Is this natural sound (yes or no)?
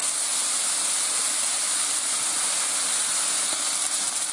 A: yes